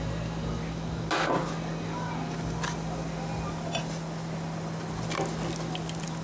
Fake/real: real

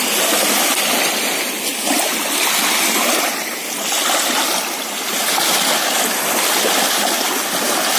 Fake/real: real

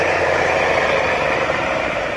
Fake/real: fake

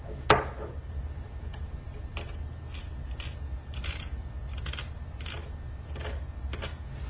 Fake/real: real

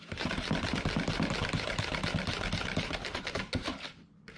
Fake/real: fake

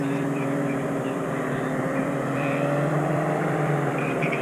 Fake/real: fake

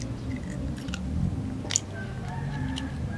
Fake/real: real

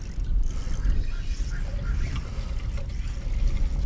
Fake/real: real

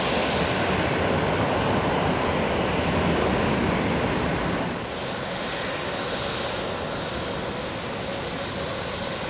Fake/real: real